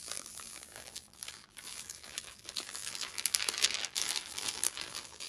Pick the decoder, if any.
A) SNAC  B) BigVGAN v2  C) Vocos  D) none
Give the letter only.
B